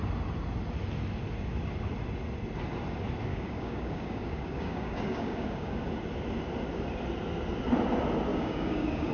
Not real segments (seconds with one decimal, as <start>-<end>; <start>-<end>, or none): 3.3-5.9; 8.3-9.1